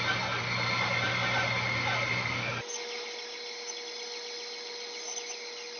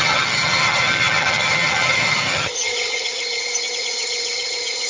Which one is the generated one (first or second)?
second